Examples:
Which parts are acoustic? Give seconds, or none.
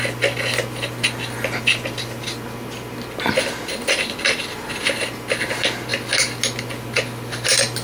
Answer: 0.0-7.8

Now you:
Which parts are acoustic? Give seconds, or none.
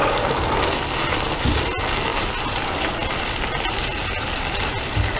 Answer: 0.0-5.2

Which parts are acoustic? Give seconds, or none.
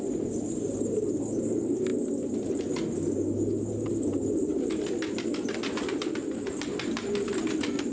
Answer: 0.0-7.9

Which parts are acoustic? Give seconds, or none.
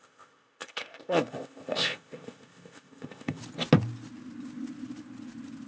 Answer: 3.4-5.7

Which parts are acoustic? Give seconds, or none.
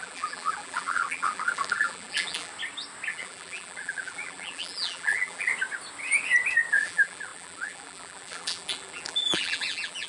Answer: 2.5-3.1; 5.5-6.7